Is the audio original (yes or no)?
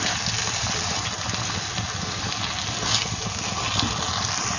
yes